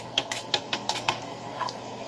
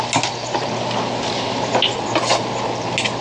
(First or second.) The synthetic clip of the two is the first